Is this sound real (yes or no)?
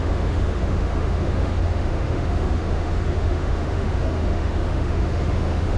no